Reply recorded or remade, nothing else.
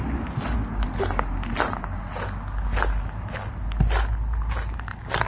recorded